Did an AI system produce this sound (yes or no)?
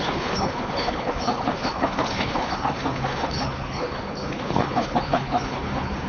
yes